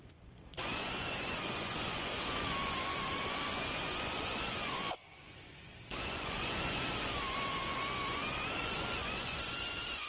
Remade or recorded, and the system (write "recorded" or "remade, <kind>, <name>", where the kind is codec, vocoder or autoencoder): remade, vocoder, Vocos